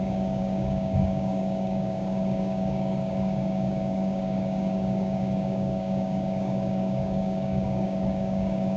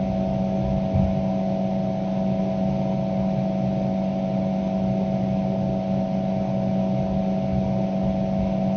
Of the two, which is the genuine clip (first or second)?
second